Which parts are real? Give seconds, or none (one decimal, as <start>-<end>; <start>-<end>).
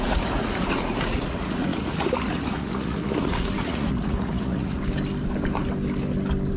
4.8-6.6